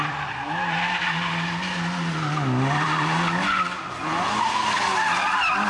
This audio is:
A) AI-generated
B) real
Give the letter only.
B